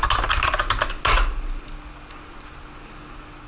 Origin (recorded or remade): recorded